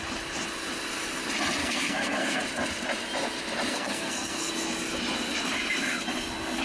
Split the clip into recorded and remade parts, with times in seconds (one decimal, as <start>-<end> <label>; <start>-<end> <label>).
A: 0.0-1.6 recorded; 1.6-2.4 remade; 2.4-3.7 recorded; 3.7-4.5 remade; 4.5-6.6 recorded